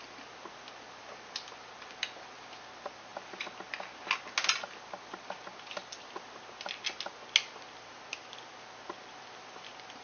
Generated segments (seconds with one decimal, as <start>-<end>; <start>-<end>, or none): none